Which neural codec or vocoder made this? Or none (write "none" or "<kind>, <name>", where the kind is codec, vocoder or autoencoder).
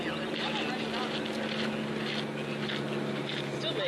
none